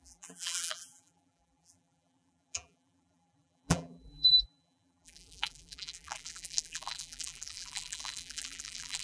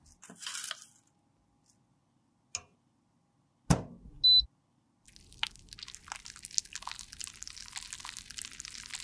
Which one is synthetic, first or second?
first